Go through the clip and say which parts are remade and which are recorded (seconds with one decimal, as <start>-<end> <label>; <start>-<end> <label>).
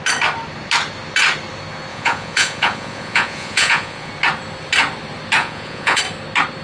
0.0-1.9 recorded; 1.9-4.1 remade; 4.1-5.4 recorded; 5.4-6.0 remade; 6.0-6.6 recorded